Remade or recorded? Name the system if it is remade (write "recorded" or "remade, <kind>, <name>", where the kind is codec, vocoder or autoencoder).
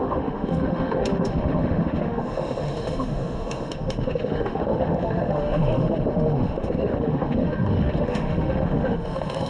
remade, autoencoder, DAC-VAE